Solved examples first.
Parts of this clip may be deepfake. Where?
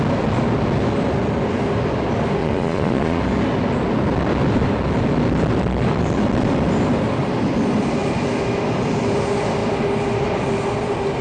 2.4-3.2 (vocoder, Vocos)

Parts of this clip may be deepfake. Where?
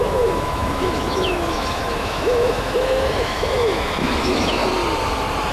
0.0-4.6 (autoencoder, DAC-VAE)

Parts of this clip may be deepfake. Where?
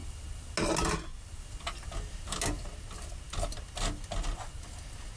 none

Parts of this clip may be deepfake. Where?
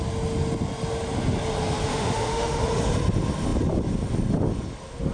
1.9-2.6 (autoencoder, DAC-VAE)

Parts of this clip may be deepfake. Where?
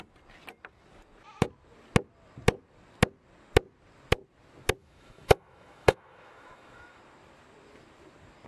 4.8-7.0 (autoencoder, DAC-VAE)